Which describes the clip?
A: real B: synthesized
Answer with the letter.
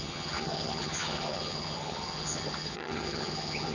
B